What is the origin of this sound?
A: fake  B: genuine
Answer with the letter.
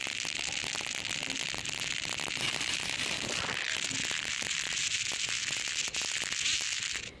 B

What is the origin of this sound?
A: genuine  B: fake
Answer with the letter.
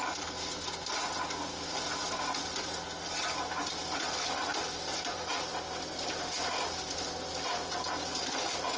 A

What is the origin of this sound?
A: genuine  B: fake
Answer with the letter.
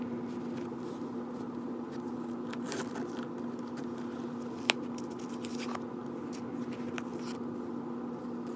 A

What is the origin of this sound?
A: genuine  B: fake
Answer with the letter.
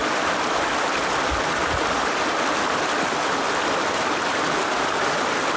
A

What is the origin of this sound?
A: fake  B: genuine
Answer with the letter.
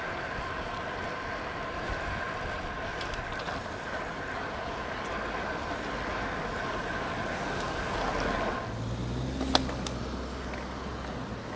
B